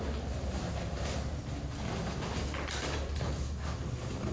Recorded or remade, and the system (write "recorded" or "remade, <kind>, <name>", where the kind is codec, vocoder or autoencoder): recorded